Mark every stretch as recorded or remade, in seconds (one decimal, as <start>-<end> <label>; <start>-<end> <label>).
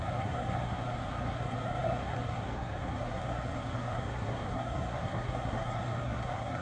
0.0-6.6 remade